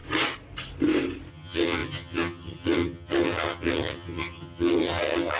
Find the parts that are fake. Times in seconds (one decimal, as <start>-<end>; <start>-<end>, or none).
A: 1.3-5.4